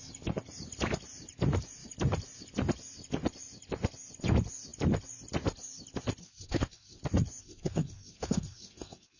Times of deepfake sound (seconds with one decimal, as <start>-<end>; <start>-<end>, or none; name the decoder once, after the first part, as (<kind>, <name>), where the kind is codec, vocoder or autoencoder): 6.2-7.0 (codec, SNAC); 7.4-9.2